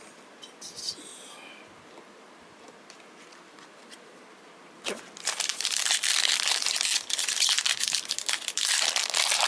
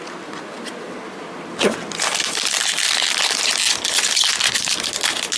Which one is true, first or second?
second